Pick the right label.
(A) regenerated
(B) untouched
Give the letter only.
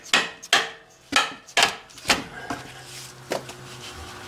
B